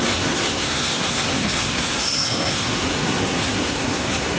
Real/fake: fake